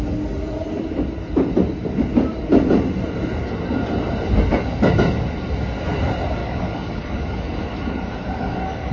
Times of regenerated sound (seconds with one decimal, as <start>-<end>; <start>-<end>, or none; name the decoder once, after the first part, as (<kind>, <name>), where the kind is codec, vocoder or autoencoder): 6.4-8.9 (codec, DAC)